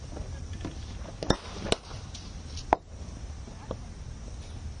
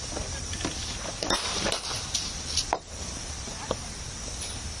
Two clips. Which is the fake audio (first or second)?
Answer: second